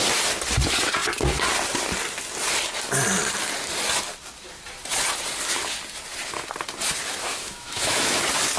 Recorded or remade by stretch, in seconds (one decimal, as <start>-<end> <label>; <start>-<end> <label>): 0.0-7.3 recorded; 7.3-8.2 remade; 8.2-8.6 recorded